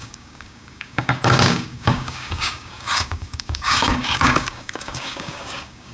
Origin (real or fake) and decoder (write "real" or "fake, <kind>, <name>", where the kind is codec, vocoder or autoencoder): fake, codec, DAC